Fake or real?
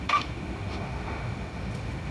fake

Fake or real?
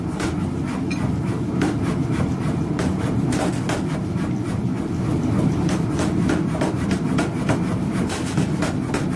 fake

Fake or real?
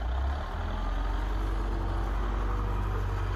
real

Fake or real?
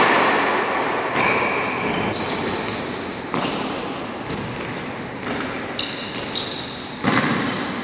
real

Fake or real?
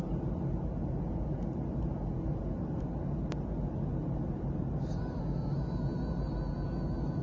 real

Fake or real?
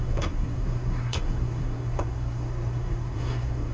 fake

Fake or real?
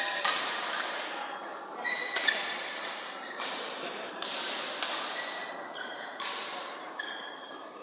fake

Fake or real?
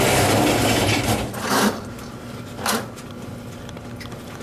real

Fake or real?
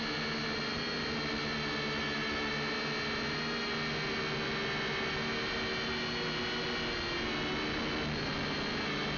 real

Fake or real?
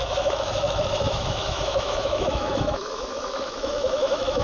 fake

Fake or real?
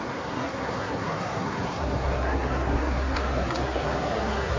fake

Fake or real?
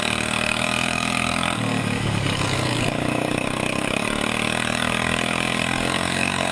fake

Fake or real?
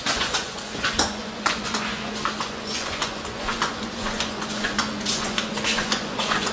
fake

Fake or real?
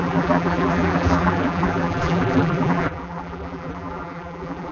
fake